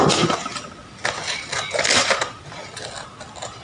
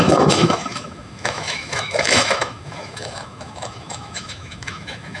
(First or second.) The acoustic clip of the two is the first